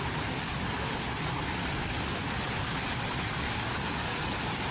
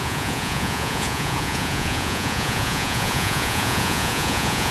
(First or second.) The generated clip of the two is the second